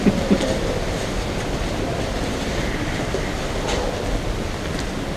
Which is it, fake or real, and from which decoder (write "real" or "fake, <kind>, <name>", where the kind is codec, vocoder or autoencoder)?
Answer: real